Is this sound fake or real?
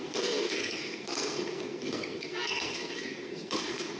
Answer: fake